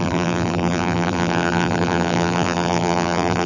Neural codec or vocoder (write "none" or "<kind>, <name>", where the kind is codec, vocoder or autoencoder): vocoder, BigVGAN v2